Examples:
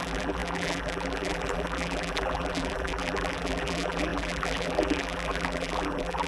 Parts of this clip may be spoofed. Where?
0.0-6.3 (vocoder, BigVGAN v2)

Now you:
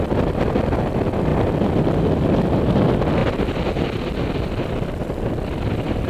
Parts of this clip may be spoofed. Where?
none

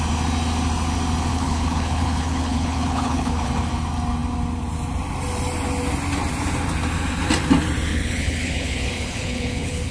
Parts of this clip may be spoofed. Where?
1.3-3.5 (codec, HILCodec); 7.9-9.9

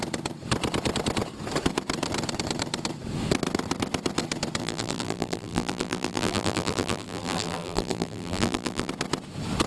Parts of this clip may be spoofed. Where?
4.6-8.9 (vocoder, BigVGAN v2)

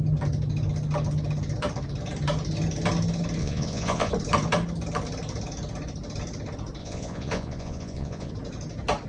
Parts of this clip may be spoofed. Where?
3.4-4.1 (vocoder, Vocos); 6.8-8.3